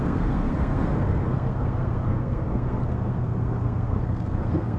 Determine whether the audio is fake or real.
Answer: fake